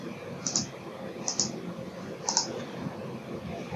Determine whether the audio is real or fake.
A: real